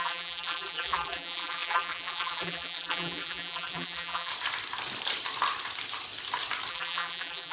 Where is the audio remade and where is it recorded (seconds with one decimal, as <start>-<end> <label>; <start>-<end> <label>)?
0.0-4.3 remade; 4.3-6.7 recorded; 6.7-7.5 remade